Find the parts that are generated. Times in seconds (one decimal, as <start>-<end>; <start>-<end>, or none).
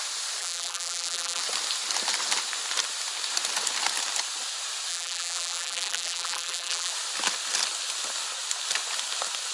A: 0.4-1.4; 4.9-6.9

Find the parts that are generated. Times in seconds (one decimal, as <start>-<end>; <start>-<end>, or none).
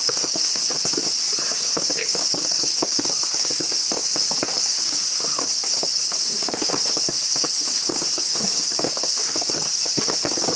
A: 0.0-1.0; 1.5-10.6